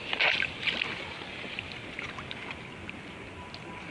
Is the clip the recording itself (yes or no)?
yes